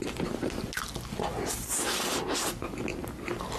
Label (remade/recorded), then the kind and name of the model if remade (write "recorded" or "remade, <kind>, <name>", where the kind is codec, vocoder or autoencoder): recorded